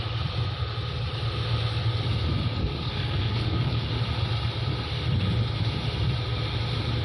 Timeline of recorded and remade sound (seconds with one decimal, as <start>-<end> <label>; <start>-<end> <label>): 0.0-2.6 recorded; 2.6-3.9 remade; 3.9-7.0 recorded